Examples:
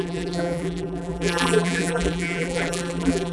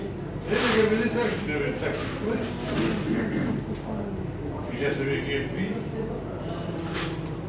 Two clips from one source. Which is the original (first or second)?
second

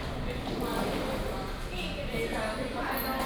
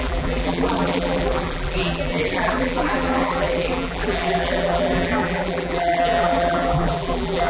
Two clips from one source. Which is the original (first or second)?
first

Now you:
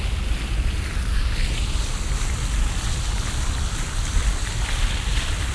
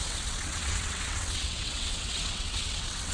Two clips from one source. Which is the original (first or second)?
first